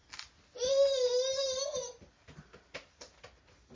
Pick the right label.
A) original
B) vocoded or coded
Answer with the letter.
A